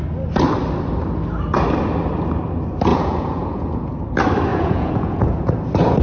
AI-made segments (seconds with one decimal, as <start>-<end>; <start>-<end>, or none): 2.9-4.0; 4.5-5.5